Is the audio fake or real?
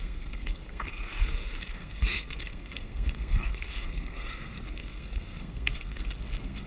fake